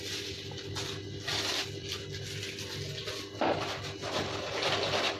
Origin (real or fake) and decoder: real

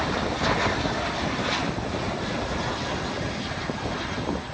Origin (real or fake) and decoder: real